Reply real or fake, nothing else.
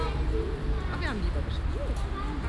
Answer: real